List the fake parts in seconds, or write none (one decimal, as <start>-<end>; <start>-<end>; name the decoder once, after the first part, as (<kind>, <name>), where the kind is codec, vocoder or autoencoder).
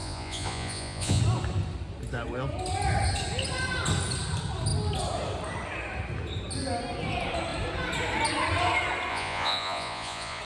0.0-1.2 (vocoder, Vocos); 9.1-10.4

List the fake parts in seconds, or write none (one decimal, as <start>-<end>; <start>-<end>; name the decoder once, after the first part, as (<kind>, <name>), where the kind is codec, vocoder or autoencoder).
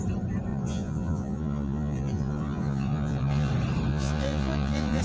0.5-3.5 (vocoder, Vocos); 3.9-5.0